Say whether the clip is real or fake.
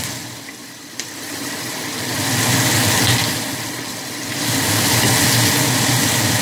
real